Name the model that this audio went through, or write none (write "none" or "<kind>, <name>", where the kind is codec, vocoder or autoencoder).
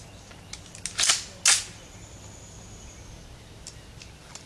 none